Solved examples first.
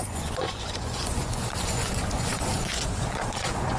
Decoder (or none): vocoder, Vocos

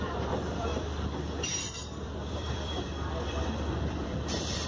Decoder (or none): vocoder, BigVGAN v2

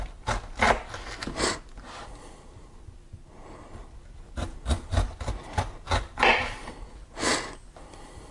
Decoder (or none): none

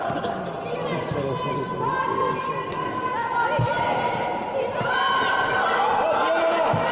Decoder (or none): none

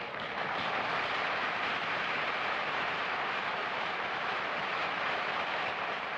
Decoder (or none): vocoder, BigVGAN v2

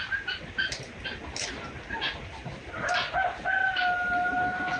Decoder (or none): none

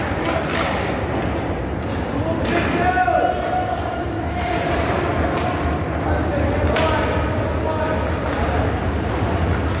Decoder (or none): none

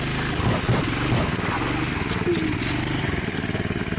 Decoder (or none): none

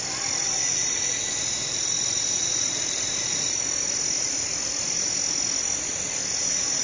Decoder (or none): none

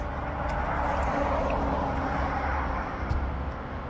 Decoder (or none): none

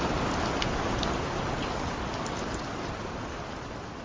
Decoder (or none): none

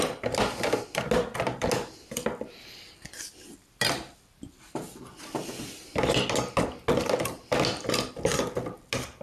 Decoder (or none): none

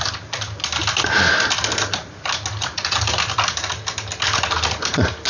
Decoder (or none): none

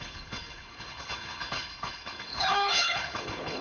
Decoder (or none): codec, HILCodec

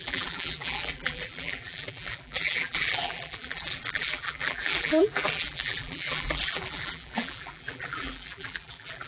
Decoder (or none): vocoder, BigVGAN v2